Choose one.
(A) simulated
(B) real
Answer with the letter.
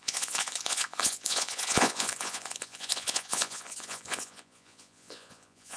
A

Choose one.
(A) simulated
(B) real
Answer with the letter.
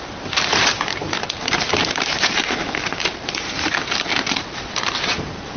A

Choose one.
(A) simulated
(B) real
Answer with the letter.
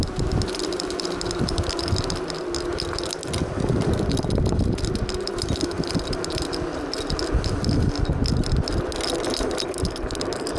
B